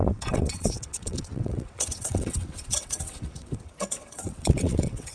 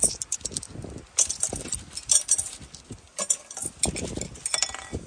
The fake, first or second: first